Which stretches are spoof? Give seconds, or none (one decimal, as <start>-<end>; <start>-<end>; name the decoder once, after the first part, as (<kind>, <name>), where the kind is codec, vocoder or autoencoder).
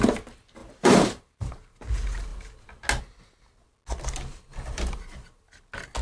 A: 0.6-1.5 (vocoder, BigVGAN v2); 4.3-5.6